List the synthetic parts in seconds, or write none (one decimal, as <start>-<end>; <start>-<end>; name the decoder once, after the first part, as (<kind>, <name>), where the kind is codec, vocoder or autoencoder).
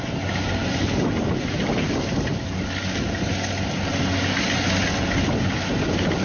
none